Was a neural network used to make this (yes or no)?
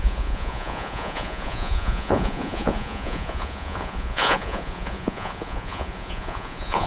yes